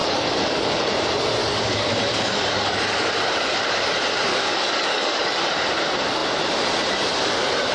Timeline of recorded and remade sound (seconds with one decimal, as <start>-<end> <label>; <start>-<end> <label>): 0.0-0.9 remade; 0.9-1.4 recorded; 1.4-3.1 remade; 3.1-4.3 recorded; 4.3-5.4 remade; 5.4-7.7 recorded